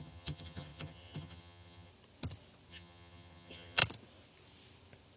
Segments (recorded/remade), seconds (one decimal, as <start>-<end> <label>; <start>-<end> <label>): 0.0-1.9 remade; 1.9-2.7 recorded; 2.7-3.8 remade; 3.8-5.2 recorded